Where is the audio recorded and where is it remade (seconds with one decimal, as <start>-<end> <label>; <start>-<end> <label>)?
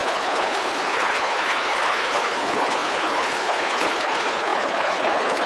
0.0-5.5 remade